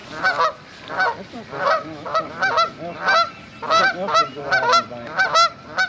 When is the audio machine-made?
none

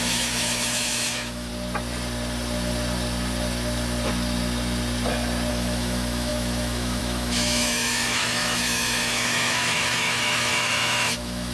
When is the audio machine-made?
0.0-1.5 (autoencoder, DAC-VAE); 5.5-11.5